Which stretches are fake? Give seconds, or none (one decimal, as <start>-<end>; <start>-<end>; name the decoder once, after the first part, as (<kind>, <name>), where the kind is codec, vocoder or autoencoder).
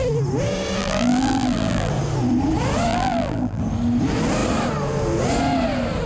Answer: 0.8-1.9 (vocoder, BigVGAN v2); 2.9-3.6